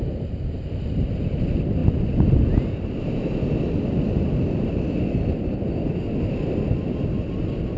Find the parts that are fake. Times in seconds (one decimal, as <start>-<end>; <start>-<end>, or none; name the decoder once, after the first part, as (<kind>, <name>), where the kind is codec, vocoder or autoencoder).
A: none